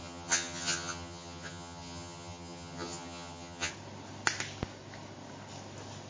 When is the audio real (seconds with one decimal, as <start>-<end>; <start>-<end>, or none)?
3.7-6.1